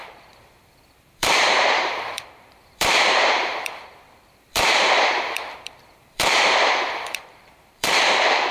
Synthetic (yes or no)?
yes